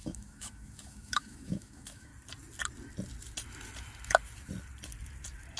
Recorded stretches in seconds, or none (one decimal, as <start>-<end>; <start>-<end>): 2.1-5.6